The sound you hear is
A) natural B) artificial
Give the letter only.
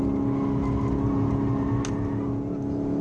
A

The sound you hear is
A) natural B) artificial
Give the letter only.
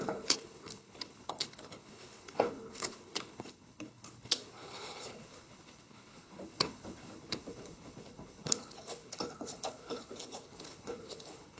B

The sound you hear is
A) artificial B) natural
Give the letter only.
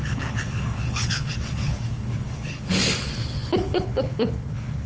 A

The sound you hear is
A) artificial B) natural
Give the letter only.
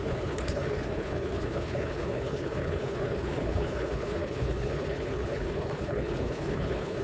A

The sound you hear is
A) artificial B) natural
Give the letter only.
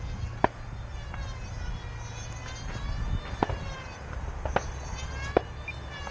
B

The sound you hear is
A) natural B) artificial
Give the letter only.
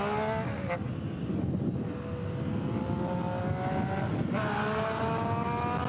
A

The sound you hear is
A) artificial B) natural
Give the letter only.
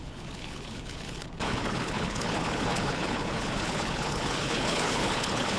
A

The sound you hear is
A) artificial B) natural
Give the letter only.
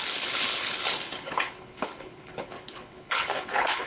A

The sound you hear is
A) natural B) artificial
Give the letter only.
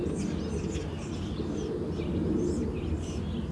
A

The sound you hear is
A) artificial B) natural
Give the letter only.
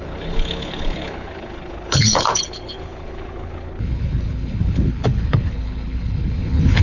A